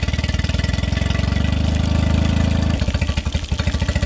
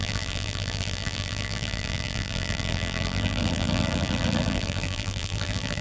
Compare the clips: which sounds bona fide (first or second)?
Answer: first